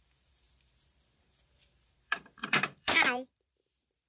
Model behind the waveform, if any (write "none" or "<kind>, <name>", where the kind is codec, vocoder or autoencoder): vocoder, BigVGAN v2